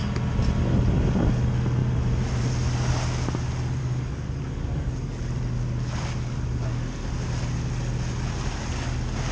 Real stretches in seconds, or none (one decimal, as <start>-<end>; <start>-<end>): 0.0-3.8; 5.1-9.3